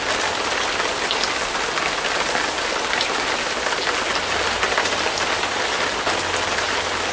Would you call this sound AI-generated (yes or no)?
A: no